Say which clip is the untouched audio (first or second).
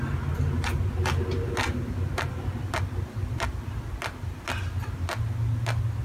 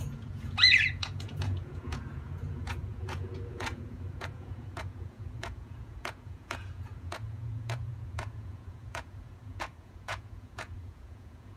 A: first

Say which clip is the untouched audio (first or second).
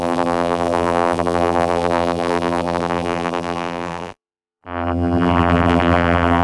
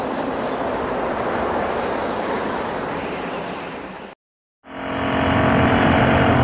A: second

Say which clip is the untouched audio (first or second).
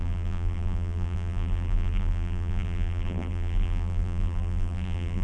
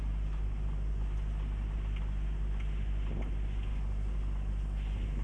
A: second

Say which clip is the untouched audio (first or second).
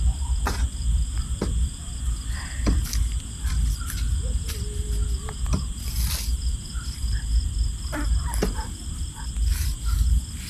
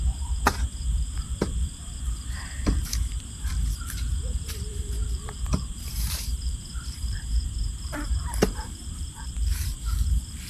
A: first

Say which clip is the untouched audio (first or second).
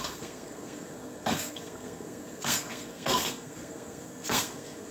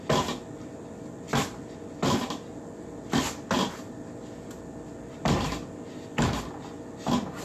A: second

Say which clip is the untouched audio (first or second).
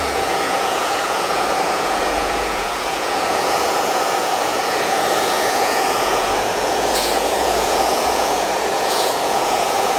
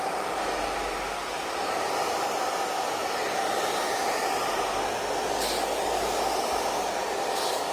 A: second